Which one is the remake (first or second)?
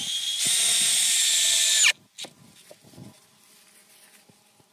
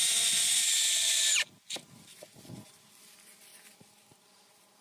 second